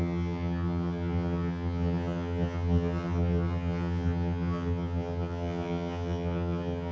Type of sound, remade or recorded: remade